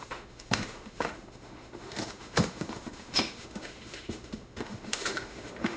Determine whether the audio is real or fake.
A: fake